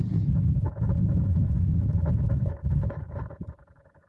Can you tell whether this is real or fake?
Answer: fake